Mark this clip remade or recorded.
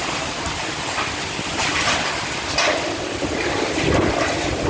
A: recorded